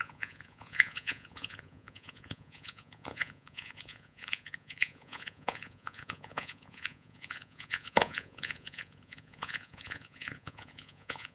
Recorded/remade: remade